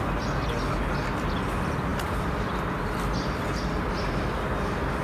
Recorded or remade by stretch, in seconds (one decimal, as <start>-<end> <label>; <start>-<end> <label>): 0.0-1.9 recorded; 1.9-3.9 remade; 3.9-5.0 recorded